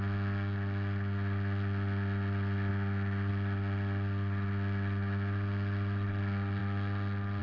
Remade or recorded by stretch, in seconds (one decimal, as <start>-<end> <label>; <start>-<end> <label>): 0.0-7.4 recorded